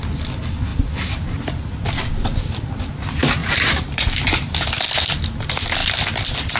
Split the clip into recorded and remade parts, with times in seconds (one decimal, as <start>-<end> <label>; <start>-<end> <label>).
0.0-0.7 recorded; 0.7-2.8 remade; 2.8-3.4 recorded; 3.4-4.7 remade; 4.7-6.6 recorded